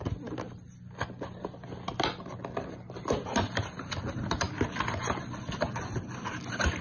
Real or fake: real